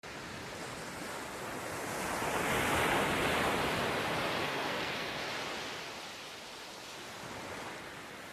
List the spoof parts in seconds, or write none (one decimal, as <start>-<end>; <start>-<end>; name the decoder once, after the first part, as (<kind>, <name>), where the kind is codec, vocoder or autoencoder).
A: 4.4-5.2 (codec, SNAC)